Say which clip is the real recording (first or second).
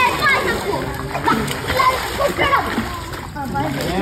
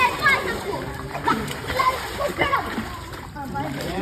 first